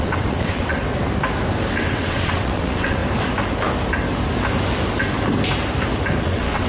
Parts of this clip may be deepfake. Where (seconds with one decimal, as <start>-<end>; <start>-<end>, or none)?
0.0-0.8; 1.7-3.0; 6.2-6.7